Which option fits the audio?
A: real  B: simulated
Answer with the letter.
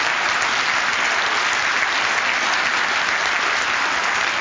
A